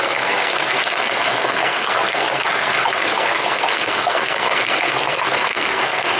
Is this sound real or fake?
fake